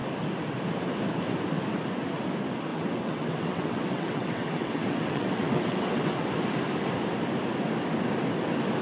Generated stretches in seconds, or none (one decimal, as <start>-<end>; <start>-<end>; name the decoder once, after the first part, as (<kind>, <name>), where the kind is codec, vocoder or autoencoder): 2.7-6.3 (vocoder, WaveNeXt)